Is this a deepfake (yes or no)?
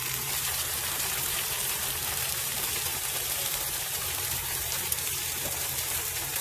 yes